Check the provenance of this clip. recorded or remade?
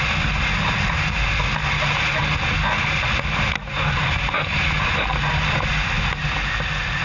recorded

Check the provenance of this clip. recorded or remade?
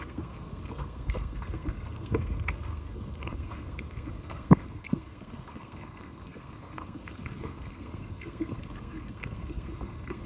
remade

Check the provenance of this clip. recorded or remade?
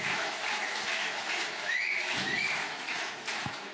remade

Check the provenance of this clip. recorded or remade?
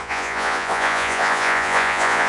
remade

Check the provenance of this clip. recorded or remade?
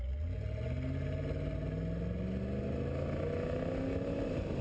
recorded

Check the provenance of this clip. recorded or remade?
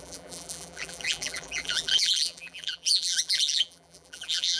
remade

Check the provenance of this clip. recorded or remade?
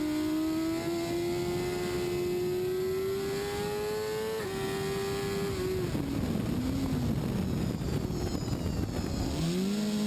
recorded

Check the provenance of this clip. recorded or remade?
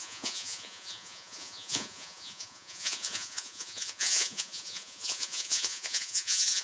remade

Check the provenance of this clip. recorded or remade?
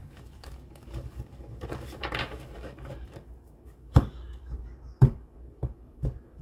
remade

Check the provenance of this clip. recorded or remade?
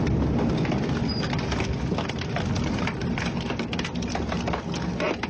recorded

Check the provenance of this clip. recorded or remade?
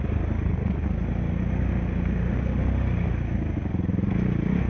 recorded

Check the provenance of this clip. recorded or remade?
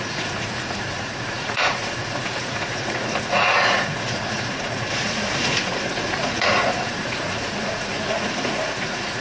remade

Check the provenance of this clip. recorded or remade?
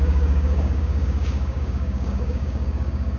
remade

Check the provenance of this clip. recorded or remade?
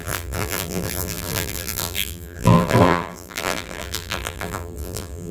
remade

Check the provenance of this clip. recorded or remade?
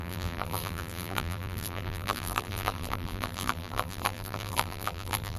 remade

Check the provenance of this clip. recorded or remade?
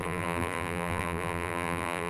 remade